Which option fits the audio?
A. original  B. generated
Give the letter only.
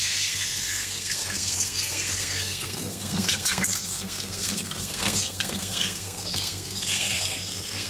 B